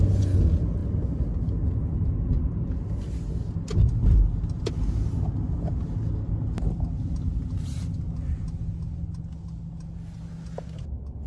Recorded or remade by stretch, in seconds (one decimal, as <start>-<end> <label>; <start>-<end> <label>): 0.0-11.3 recorded